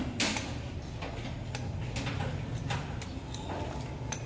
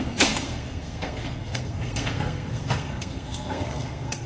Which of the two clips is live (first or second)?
first